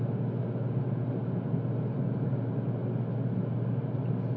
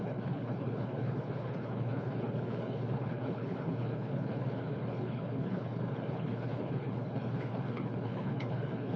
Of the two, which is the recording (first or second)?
first